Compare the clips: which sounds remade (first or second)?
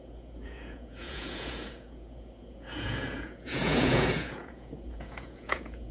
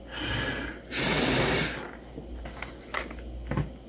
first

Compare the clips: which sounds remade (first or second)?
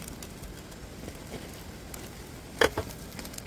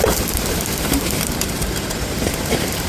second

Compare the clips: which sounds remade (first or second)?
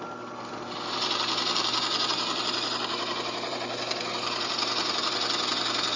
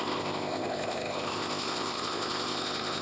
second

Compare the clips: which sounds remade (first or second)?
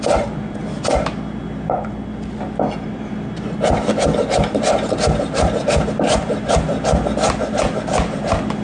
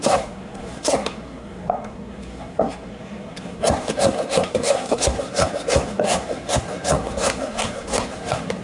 second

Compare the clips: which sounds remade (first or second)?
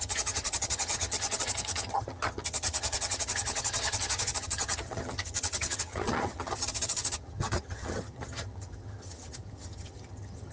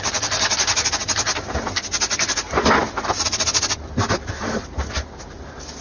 first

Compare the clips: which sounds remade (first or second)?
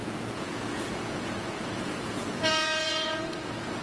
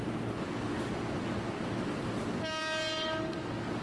first